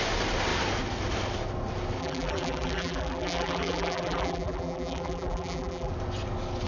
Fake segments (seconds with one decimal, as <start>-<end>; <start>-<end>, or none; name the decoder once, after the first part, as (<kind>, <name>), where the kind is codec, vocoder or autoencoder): 2.0-5.9 (vocoder, BigVGAN v2)